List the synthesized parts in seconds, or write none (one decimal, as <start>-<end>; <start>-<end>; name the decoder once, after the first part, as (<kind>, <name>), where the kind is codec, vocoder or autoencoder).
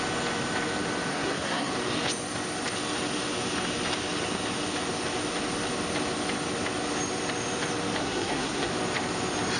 1.1-1.7 (codec, SNAC); 8.0-8.7